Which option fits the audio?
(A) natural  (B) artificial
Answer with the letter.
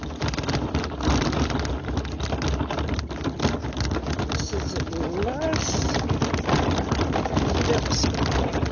A